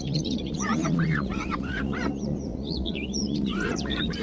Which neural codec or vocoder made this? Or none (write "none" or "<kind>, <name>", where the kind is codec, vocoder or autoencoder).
vocoder, Vocos